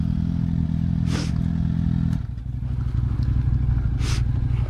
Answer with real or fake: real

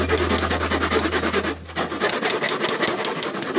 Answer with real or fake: real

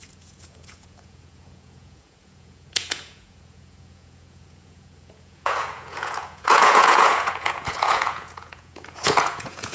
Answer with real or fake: fake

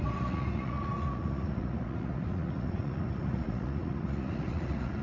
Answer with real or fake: fake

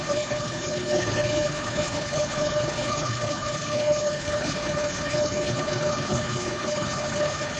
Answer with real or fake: fake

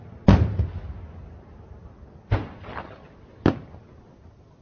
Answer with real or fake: real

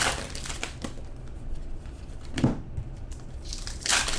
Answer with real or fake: real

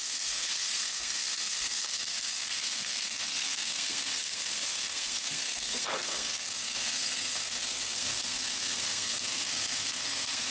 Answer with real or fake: fake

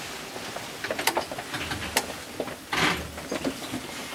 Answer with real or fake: real